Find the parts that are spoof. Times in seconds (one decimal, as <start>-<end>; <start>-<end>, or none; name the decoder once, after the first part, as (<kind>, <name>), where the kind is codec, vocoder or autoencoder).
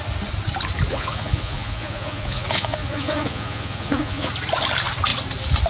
0.9-4.3 (vocoder, Vocos)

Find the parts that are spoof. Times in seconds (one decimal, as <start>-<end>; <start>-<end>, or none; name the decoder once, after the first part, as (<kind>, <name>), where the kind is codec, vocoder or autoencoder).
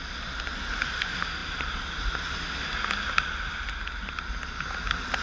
none